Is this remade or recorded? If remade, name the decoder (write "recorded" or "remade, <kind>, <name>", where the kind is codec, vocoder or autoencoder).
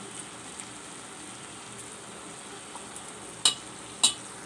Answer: recorded